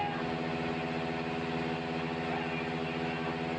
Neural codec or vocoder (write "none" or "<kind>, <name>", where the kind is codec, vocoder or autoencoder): none